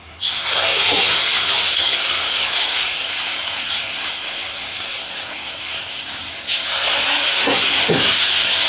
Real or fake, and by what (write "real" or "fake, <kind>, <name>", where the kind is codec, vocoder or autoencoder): fake, codec, SNAC